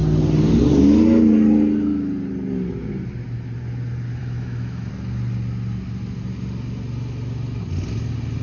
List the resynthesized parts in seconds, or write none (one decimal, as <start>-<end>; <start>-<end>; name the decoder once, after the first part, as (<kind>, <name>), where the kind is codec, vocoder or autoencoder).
4.2-4.9 (autoencoder, DAC-VAE)

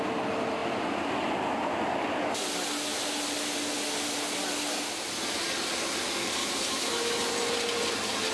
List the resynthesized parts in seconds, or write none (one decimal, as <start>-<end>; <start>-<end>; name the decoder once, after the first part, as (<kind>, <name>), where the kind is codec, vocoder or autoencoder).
6.4-7.3 (autoencoder, DAC-VAE)

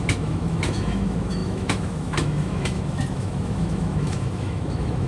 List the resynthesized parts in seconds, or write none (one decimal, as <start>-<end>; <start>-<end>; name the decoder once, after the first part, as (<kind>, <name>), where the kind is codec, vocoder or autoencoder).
0.0-5.1 (autoencoder, DAC-VAE)

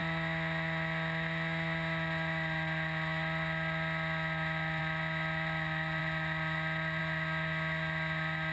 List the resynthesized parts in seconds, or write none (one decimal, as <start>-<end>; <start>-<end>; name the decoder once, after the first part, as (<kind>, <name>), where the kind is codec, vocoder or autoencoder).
none

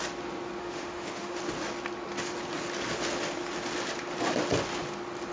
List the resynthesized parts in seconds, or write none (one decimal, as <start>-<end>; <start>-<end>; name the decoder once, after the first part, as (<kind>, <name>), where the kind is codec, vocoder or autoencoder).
0.6-1.4 (autoencoder, DAC-VAE)

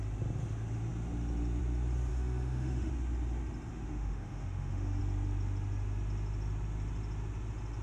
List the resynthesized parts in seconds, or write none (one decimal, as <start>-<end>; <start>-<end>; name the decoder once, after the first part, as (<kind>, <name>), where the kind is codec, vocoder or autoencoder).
2.1-2.9 (autoencoder, DAC-VAE); 3.7-5.0

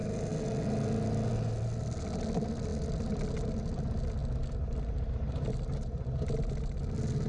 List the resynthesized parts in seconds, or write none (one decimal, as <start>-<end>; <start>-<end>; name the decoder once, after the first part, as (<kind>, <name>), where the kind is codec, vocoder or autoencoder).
none